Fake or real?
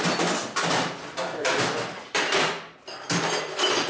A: real